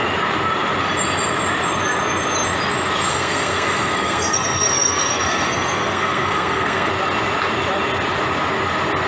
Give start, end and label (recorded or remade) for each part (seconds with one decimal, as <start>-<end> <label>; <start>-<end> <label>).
0.0-3.1 recorded; 3.1-6.9 remade; 6.9-9.1 recorded